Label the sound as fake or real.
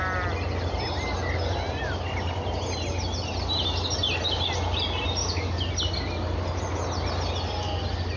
real